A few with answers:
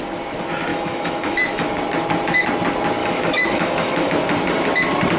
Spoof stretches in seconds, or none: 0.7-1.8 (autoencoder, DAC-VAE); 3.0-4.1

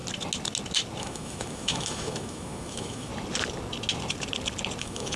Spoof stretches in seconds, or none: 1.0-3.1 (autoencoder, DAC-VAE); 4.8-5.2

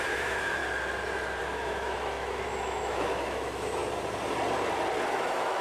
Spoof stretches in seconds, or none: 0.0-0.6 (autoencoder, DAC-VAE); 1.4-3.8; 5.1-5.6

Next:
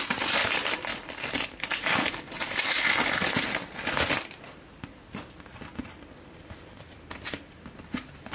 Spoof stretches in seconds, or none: none

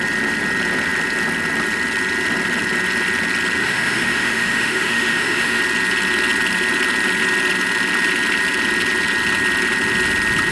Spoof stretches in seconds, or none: 3.6-5.6 (autoencoder, DAC-VAE)

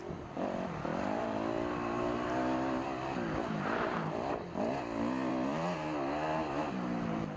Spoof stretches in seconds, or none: none